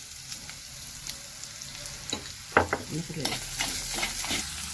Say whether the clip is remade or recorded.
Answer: recorded